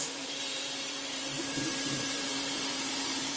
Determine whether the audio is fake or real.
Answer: fake